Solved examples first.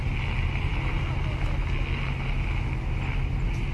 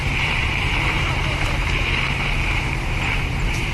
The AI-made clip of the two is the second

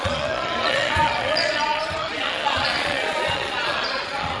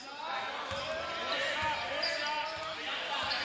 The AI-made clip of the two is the first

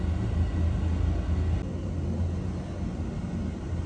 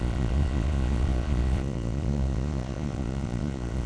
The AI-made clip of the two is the second